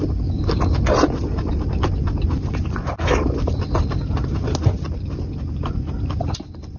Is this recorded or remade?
recorded